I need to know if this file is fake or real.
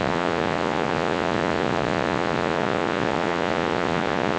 fake